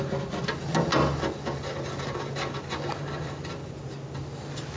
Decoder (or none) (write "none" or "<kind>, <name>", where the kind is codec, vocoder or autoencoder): none